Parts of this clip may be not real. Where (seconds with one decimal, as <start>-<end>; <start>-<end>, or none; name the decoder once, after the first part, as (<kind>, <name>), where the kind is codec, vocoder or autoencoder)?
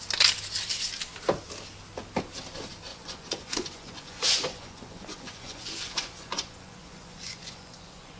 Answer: 2.9-8.2 (vocoder, Vocos)